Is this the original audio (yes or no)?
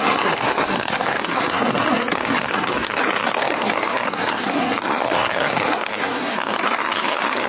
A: no